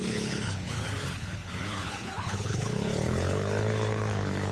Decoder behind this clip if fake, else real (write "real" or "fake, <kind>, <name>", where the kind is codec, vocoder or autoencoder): fake, codec, HILCodec